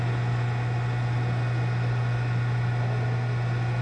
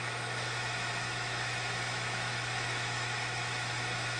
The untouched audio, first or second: first